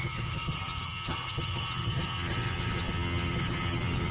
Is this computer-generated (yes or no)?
yes